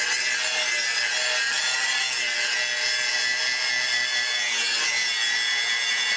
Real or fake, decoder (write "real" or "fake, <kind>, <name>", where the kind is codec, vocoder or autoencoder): real